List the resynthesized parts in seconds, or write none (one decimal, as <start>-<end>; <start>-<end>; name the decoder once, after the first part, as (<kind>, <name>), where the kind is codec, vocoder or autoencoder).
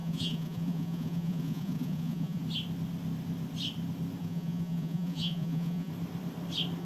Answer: 0.0-2.4 (vocoder, Vocos); 4.2-5.9